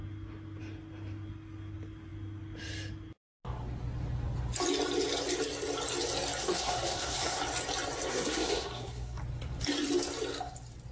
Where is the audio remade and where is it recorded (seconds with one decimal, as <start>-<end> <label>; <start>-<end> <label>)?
0.0-6.4 recorded; 6.4-7.4 remade; 7.4-8.1 recorded; 8.1-9.2 remade; 9.2-10.9 recorded